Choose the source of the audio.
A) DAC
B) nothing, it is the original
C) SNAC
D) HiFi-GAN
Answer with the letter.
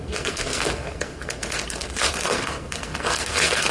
C